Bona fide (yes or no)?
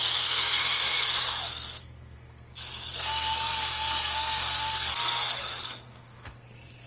no